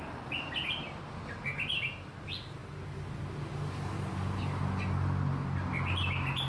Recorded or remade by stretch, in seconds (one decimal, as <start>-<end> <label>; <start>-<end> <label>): 0.0-6.5 recorded